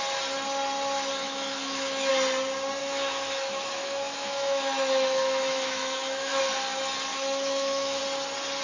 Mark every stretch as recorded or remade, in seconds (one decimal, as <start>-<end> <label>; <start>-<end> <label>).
0.0-1.2 recorded; 1.2-2.1 remade; 2.1-2.8 recorded; 2.8-6.4 remade; 6.4-7.1 recorded; 7.1-8.0 remade; 8.0-8.6 recorded